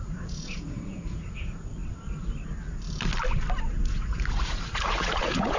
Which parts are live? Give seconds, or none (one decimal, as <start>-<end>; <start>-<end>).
1.8-3.6